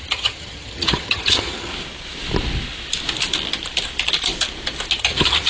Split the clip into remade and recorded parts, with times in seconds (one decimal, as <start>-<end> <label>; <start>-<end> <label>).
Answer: 0.0-1.7 remade; 1.7-5.0 recorded; 5.0-5.5 remade